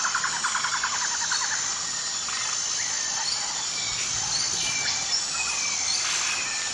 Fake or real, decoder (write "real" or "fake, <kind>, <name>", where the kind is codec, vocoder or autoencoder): real